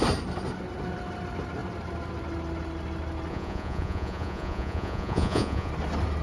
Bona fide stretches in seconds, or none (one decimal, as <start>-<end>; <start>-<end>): 0.0-3.3; 5.7-6.2

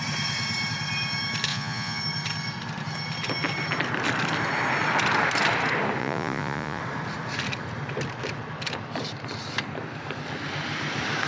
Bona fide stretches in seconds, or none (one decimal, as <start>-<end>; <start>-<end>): 0.0-1.5; 2.0-6.0; 6.8-11.3

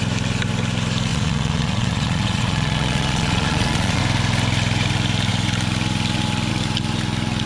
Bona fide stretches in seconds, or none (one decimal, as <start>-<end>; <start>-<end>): 0.0-1.1; 4.0-7.5

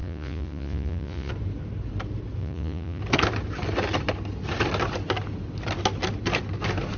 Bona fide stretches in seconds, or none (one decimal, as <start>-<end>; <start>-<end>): 1.3-2.4; 3.0-7.0

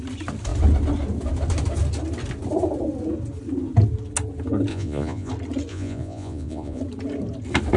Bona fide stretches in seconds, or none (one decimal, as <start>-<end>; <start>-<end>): 0.0-4.7; 5.3-5.7; 6.8-7.8